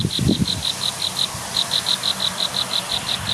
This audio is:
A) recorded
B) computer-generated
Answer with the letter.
B